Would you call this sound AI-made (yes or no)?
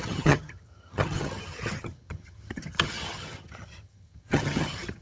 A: yes